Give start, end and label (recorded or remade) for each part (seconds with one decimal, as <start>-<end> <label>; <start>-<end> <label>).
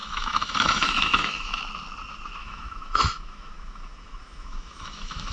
0.0-1.6 remade; 1.6-2.4 recorded; 2.4-5.3 remade